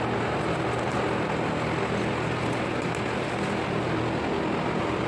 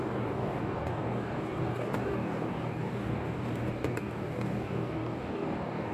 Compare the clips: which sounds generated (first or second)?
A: second